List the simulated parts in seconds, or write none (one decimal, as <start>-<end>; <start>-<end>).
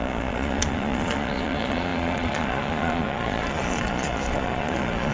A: 0.0-5.1